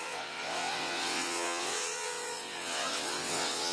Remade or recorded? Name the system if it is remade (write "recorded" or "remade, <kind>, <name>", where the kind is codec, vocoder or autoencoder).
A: remade, vocoder, WaveNeXt